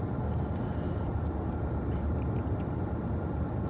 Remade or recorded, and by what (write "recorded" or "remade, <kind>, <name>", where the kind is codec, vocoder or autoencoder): recorded